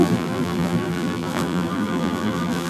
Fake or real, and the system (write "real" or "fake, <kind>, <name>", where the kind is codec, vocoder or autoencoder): fake, vocoder, BigVGAN v2